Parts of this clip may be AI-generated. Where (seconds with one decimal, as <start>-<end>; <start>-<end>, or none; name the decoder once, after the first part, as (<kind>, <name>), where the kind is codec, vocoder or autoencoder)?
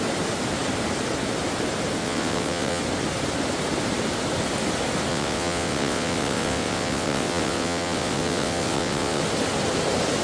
2.0-2.8 (vocoder, WaveNeXt); 5.1-9.2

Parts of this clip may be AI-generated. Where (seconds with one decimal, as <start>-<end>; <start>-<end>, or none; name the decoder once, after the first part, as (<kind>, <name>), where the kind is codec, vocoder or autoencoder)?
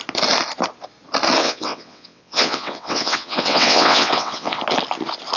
1.4-4.6 (vocoder, WaveNeXt)